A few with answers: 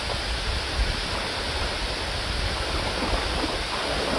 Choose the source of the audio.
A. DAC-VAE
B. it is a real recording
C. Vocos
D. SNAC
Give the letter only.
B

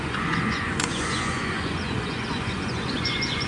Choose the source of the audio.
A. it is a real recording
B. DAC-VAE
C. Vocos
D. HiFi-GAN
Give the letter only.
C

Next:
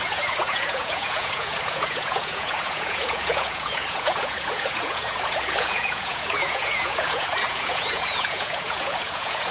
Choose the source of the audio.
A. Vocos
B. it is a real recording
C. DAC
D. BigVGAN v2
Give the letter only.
A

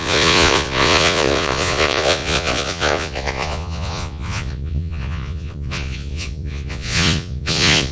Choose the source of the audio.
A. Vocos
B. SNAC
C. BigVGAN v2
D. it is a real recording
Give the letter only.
A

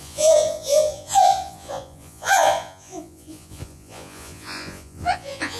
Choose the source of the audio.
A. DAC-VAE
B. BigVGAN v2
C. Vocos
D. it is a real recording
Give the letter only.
C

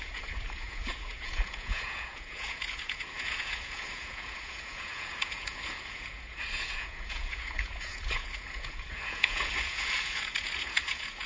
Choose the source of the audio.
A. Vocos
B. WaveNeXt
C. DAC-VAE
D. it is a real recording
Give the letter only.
A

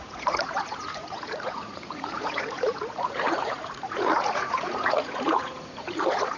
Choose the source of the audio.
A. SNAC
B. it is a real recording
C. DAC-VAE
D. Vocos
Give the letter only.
D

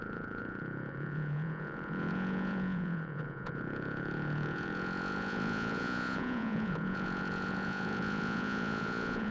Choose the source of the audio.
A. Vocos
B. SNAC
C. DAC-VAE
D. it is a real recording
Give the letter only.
A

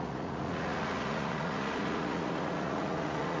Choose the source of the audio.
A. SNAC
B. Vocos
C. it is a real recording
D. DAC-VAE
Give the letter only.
B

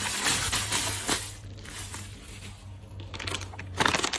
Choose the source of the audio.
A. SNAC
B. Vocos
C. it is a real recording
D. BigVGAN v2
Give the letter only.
C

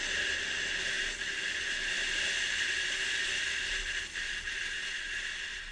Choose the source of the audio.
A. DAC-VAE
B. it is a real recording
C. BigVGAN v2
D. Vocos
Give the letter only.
B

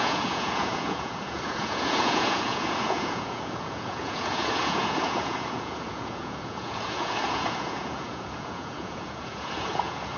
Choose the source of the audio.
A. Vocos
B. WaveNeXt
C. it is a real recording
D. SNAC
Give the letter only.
A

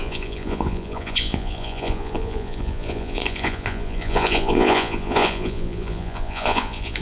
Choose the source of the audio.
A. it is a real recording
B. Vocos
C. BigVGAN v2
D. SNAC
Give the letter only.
B